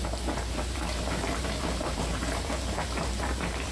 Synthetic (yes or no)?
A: yes